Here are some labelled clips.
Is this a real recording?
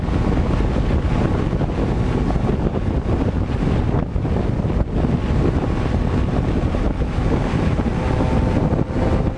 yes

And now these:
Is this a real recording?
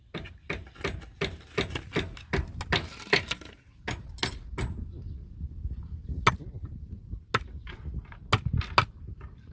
yes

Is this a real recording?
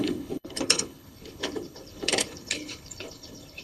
no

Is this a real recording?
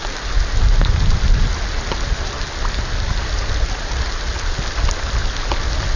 yes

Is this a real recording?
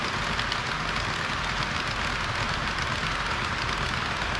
yes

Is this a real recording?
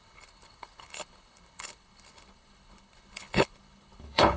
no